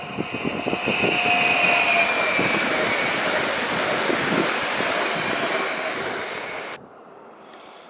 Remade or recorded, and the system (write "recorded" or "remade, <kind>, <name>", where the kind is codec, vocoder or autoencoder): recorded